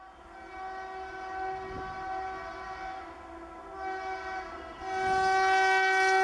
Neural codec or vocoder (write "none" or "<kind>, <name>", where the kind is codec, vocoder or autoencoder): none